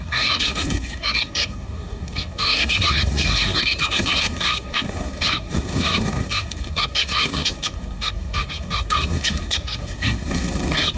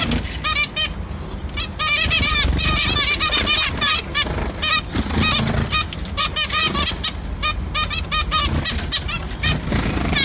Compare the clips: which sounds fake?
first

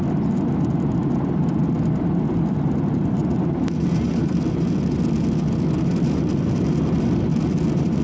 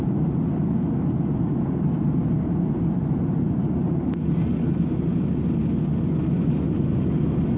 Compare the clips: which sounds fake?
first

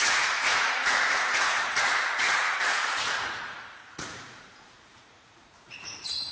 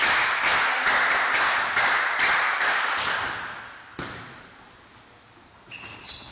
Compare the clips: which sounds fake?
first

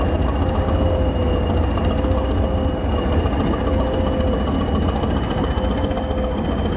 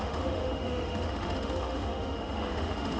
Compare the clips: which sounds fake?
second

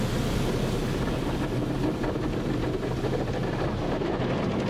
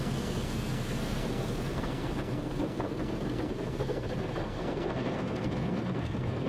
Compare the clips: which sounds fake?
second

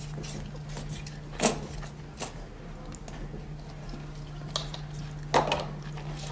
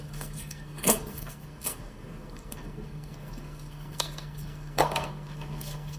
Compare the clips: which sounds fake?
second